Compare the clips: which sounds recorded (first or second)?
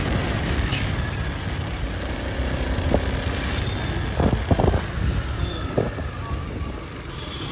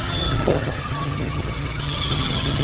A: first